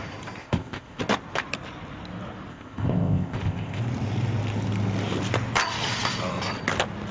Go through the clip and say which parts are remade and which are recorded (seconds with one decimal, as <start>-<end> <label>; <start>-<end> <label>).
0.0-0.4 recorded; 0.4-1.0 remade; 1.0-2.5 recorded; 2.5-3.8 remade; 3.8-7.1 recorded